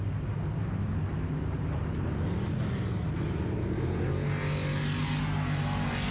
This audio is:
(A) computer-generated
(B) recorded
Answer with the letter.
B